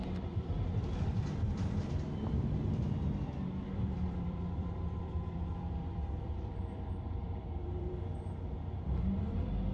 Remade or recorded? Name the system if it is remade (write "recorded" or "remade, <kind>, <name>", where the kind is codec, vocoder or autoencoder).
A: remade, vocoder, BigVGAN v2